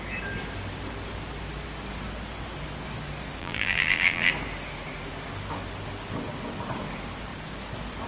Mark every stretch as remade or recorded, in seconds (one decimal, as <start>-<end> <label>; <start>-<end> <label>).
0.0-3.4 recorded; 3.4-4.3 remade; 4.3-8.1 recorded